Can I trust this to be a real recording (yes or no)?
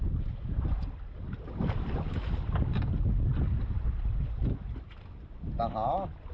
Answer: yes